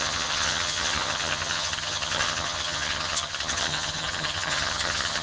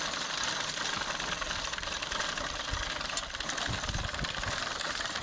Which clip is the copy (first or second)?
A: first